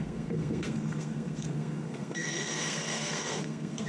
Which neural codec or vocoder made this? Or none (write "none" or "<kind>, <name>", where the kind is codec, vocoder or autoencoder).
codec, SNAC